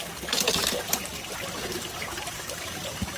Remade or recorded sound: remade